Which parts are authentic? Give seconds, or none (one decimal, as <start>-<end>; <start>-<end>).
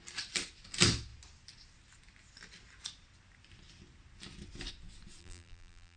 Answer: 0.0-5.2